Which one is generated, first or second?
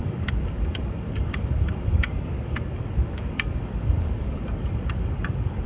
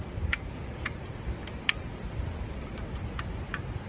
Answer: first